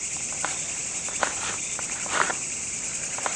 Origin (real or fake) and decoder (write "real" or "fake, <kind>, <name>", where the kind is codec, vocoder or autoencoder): fake, vocoder, BigVGAN v2